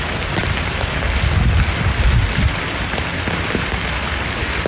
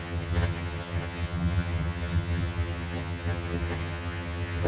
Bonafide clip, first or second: first